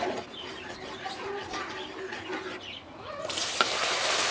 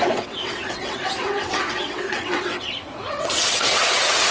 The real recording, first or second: first